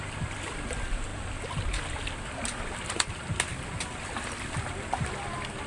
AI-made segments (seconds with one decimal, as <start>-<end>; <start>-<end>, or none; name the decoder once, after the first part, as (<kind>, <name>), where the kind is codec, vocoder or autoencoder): none